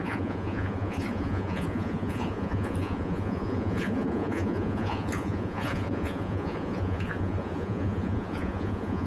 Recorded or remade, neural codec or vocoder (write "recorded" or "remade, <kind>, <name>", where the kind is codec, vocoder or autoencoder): remade, vocoder, Vocos